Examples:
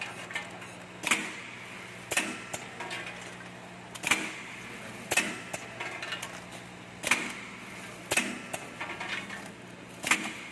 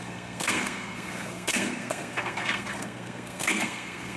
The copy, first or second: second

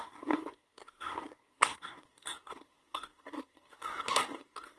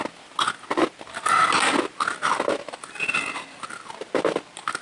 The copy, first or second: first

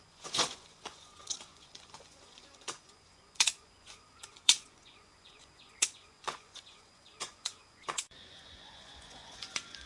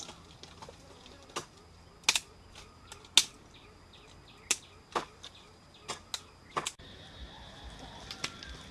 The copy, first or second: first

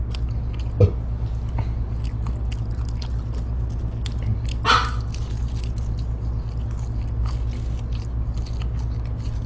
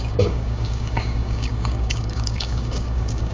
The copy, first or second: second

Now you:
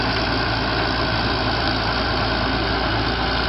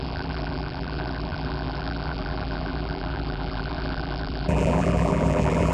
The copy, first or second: second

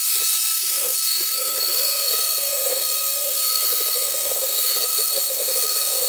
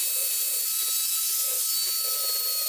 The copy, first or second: first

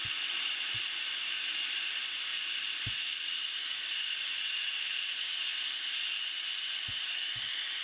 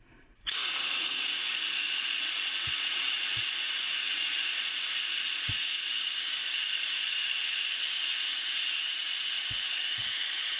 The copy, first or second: second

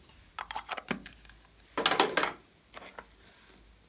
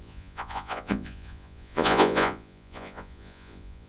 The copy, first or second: second